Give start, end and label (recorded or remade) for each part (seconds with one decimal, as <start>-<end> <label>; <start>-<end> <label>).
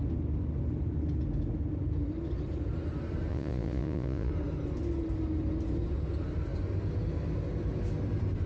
0.0-3.3 recorded; 3.3-4.3 remade; 4.3-8.5 recorded